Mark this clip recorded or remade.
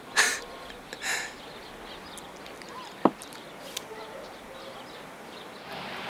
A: recorded